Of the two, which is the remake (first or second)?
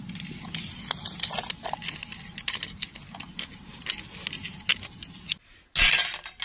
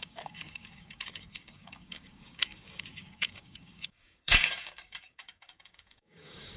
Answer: second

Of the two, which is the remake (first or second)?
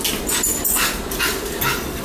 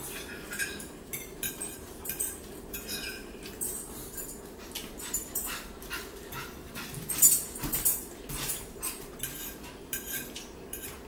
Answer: second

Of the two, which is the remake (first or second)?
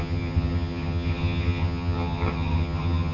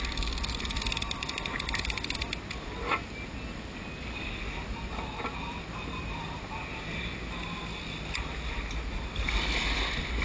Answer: first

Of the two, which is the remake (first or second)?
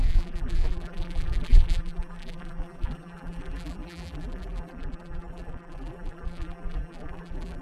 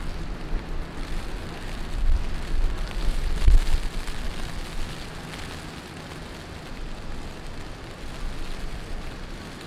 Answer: first